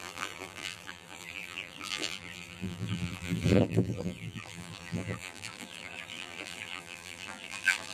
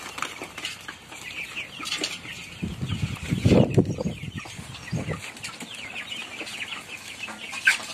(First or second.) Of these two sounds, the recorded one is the second